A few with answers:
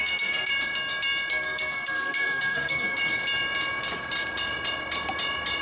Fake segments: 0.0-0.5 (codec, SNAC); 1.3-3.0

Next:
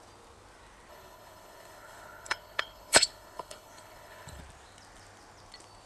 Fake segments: 0.9-4.4 (codec, HILCodec)

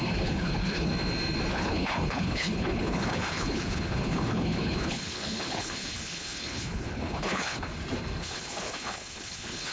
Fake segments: 0.0-0.9 (codec, HILCodec); 1.5-7.7; 8.2-9.7

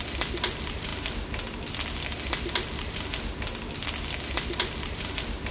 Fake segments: none

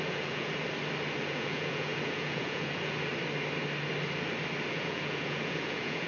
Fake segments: 0.0-0.5 (vocoder, Vocos); 1.2-3.1; 4.7-6.1

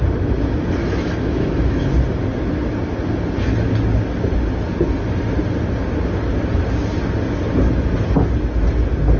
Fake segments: 0.8-1.9 (autoencoder, DAC-VAE)